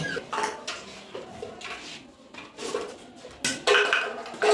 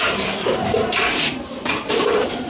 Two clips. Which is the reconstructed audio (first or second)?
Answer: second